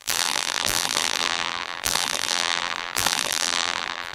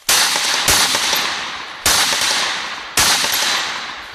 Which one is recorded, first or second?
second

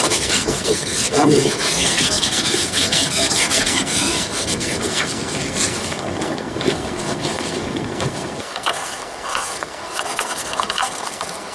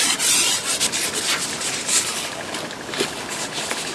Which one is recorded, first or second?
second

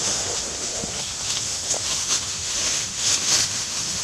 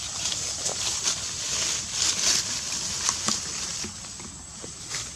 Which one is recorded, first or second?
second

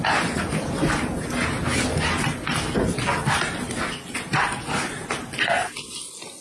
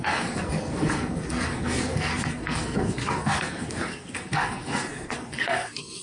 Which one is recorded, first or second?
first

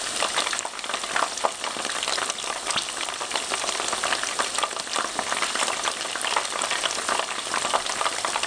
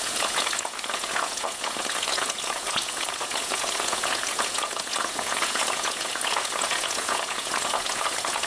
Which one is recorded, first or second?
first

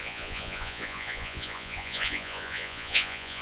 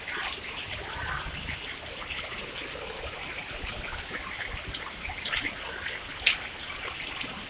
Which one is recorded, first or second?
second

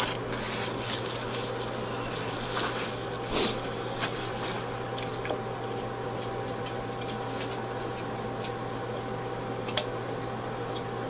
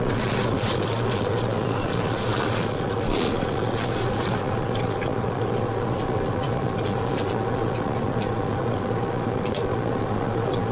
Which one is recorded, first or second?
first